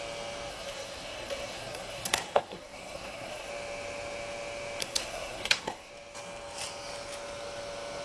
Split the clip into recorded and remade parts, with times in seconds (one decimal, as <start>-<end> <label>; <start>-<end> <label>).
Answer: 0.0-0.5 recorded; 0.5-3.5 remade; 3.5-4.8 recorded; 4.8-5.9 remade; 5.9-8.0 recorded